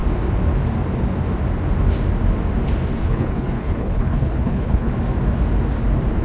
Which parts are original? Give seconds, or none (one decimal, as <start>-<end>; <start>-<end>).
0.0-3.0; 4.9-6.2

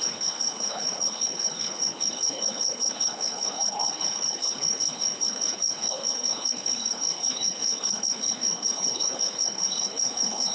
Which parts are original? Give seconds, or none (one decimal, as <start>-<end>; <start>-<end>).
none